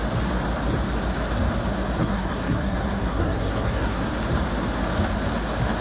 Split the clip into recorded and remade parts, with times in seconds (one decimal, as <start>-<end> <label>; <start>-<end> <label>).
0.0-2.0 recorded; 2.0-4.1 remade; 4.1-5.8 recorded